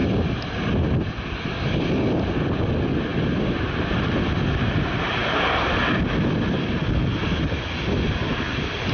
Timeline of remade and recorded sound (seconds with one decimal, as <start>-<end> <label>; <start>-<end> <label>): 0.0-8.9 recorded